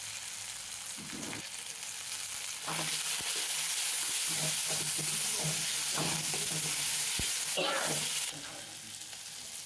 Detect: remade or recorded recorded